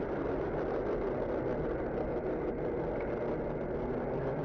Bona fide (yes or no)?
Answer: yes